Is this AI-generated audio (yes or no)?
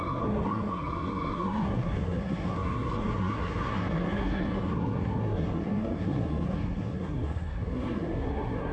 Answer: yes